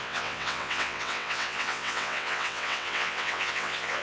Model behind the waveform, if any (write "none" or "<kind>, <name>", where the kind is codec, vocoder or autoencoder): vocoder, WaveNeXt